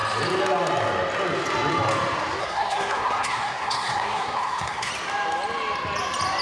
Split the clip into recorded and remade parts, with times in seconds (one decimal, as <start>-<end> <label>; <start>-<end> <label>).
0.0-2.4 recorded; 2.4-4.9 remade; 4.9-6.4 recorded